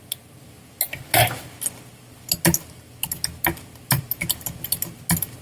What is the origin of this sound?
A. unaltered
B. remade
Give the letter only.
A